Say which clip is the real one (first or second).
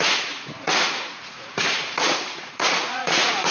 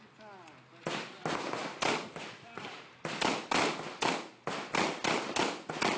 second